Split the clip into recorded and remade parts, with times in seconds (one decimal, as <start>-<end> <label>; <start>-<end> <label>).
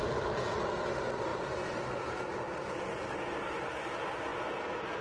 0.0-5.0 recorded